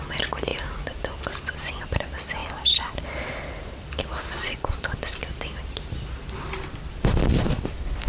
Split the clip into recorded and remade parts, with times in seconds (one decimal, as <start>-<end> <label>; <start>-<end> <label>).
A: 0.0-0.5 remade; 0.5-1.8 recorded; 1.8-5.2 remade; 5.2-6.9 recorded; 6.9-8.1 remade